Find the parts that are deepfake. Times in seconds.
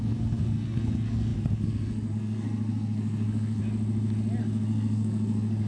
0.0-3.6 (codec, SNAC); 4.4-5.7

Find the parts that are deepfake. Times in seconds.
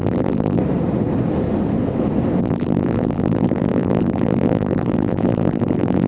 0.0-0.6 (vocoder, BigVGAN v2); 2.4-6.1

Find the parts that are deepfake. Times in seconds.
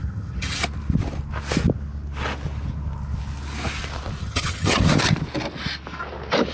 0.0-0.6 (vocoder, HiFi-GAN); 4.2-4.8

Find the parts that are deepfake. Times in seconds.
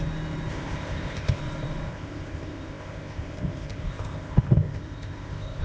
0.5-1.4 (codec, ZipCodec); 1.9-5.6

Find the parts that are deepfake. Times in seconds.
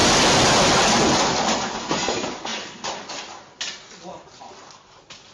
none